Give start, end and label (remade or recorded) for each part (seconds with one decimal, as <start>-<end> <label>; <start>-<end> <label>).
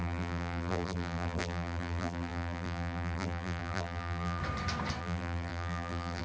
0.0-4.4 remade; 4.4-5.0 recorded; 5.0-6.2 remade